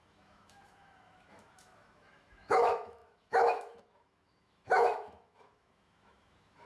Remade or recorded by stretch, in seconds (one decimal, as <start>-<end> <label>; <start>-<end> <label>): 0.0-6.7 remade